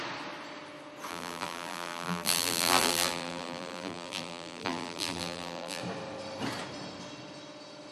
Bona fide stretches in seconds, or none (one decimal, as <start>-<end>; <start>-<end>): 0.0-1.1; 5.8-7.9

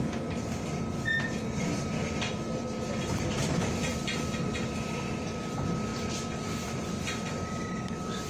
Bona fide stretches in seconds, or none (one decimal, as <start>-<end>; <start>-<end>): none